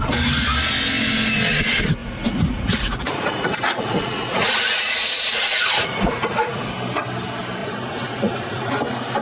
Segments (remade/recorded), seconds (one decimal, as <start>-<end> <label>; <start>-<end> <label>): 0.0-2.0 recorded; 2.0-6.7 remade; 6.7-7.6 recorded; 7.6-8.7 remade; 8.7-9.2 recorded